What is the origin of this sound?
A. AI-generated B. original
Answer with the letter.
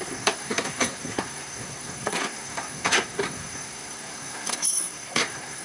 A